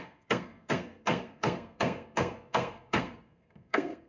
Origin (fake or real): fake